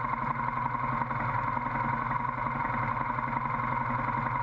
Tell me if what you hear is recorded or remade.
recorded